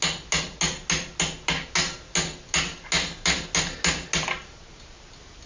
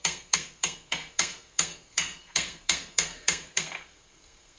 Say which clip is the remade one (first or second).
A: second